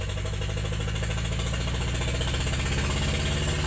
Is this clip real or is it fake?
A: real